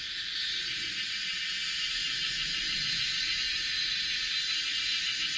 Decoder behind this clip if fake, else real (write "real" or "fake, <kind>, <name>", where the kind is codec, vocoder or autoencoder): real